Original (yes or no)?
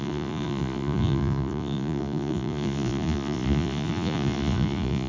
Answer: no